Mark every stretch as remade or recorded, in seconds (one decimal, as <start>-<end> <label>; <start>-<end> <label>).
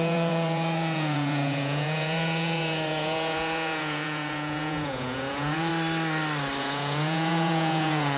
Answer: 0.0-5.7 remade; 5.7-6.6 recorded; 6.6-8.2 remade